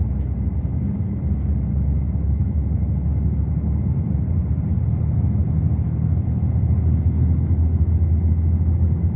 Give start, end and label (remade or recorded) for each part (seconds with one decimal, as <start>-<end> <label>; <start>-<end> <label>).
0.0-9.2 recorded